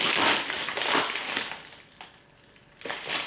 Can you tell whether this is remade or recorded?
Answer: recorded